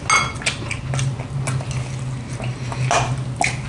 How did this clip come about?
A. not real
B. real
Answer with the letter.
B